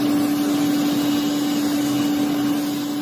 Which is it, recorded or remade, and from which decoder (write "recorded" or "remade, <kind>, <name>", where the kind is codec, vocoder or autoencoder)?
recorded